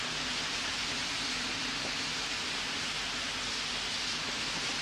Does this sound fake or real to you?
real